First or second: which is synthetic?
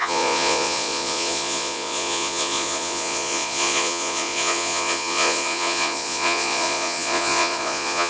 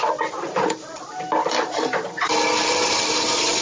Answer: first